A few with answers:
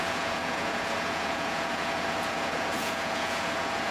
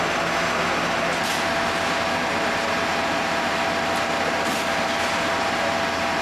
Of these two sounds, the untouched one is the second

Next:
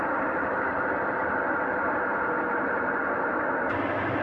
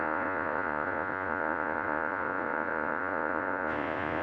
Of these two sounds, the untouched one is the first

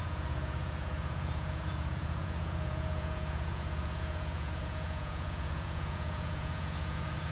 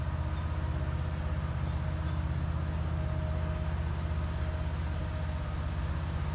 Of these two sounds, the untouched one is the second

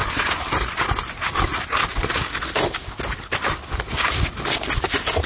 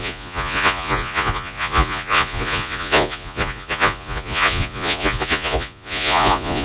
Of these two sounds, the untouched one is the first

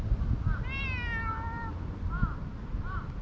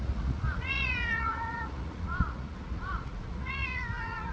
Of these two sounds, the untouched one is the first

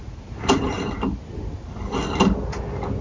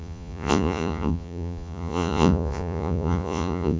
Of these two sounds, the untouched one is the first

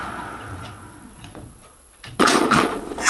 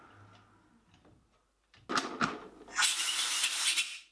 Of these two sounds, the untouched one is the second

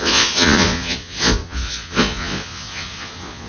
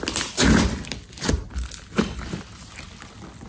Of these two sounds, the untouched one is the second